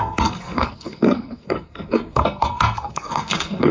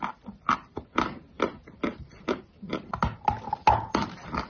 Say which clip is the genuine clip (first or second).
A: second